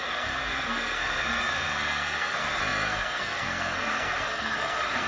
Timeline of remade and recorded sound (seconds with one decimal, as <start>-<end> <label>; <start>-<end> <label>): 0.0-5.1 remade